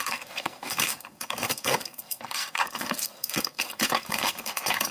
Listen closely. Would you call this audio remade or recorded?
remade